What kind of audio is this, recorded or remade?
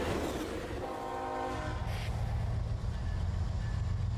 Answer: recorded